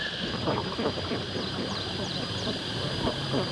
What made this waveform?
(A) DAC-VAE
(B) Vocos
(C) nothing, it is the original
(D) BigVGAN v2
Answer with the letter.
D